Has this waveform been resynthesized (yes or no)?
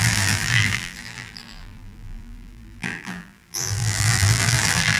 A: yes